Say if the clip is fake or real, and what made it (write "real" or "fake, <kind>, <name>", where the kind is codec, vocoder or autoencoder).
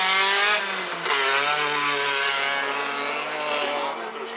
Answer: real